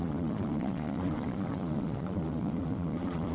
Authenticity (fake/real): fake